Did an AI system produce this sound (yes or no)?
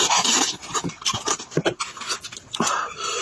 yes